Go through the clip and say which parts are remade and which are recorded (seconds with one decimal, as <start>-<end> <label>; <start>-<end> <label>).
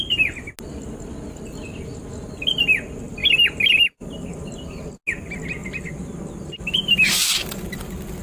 0.0-5.6 recorded; 5.6-7.7 remade; 7.7-8.2 recorded